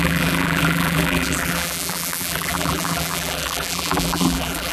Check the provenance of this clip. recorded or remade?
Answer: remade